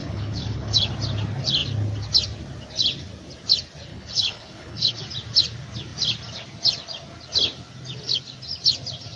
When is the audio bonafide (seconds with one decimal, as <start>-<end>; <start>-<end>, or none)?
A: 0.9-3.9; 5.0-9.2